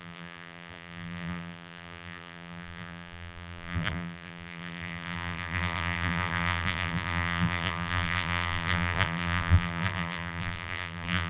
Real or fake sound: fake